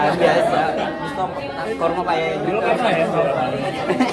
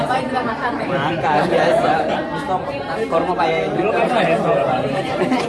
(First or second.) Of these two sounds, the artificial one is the second